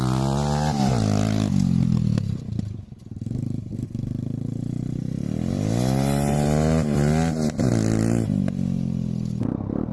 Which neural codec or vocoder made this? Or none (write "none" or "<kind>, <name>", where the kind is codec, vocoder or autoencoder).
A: none